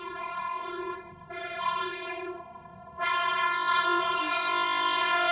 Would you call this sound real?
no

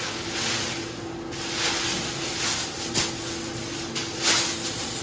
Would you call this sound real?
yes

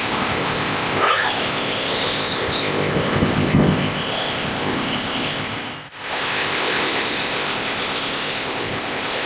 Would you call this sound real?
no